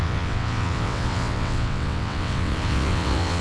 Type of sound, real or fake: fake